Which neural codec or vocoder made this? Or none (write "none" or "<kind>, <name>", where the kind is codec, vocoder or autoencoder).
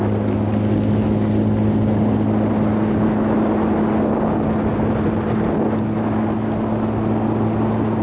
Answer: none